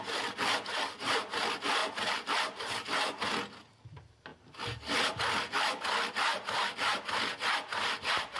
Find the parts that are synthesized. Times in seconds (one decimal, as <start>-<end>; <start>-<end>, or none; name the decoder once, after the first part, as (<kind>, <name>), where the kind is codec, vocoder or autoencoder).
none